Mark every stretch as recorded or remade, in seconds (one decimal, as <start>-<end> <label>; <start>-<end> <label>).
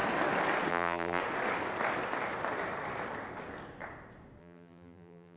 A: 0.0-0.7 recorded; 0.7-1.2 remade; 1.2-4.4 recorded; 4.4-5.4 remade